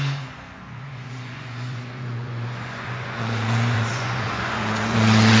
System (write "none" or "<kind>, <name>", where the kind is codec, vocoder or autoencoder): vocoder, Vocos